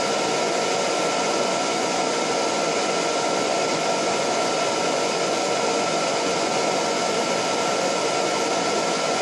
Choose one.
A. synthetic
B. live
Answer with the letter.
A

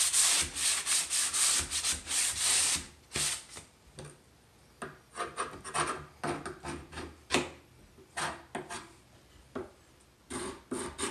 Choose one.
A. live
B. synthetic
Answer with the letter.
A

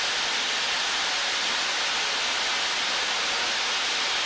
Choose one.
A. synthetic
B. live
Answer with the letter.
B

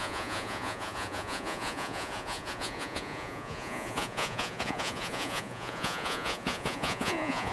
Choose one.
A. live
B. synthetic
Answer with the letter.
B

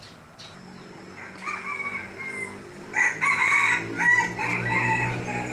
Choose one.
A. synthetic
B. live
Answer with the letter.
B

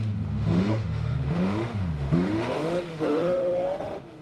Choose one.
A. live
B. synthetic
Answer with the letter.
B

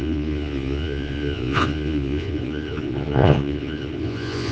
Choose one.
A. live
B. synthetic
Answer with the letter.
B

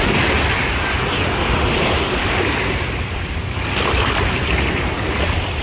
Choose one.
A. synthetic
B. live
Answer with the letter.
B